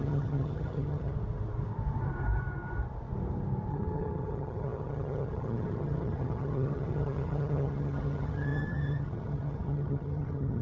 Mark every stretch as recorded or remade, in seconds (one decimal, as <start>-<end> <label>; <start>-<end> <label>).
0.0-1.1 remade; 1.1-3.7 recorded; 3.7-10.6 remade